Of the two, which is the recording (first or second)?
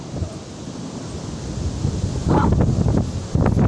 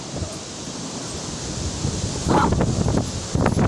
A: first